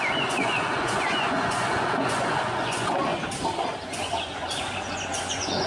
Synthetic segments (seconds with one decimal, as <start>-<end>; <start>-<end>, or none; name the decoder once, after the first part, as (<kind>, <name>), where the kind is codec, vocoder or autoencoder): 0.0-3.1 (vocoder, Vocos); 3.9-5.7